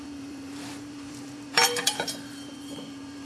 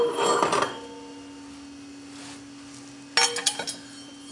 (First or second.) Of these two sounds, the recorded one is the second